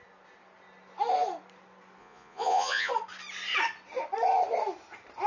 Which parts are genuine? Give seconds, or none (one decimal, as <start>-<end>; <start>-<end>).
0.0-2.0; 2.9-5.3